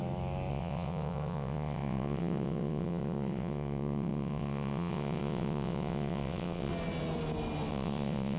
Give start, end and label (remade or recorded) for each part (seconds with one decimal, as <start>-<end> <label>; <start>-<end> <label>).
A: 0.0-0.5 recorded; 0.5-6.7 remade; 6.7-7.7 recorded; 7.7-8.4 remade